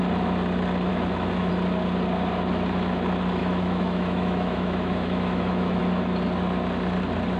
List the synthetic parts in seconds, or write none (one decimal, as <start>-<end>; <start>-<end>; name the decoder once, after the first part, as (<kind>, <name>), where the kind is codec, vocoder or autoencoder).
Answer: 0.9-1.5 (autoencoder, DAC-VAE); 3.4-5.8